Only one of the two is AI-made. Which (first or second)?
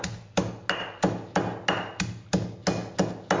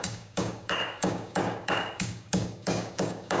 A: second